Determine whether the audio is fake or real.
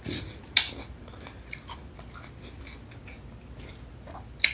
real